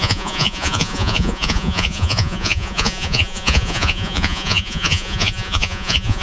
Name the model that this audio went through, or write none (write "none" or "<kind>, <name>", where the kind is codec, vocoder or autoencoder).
vocoder, Vocos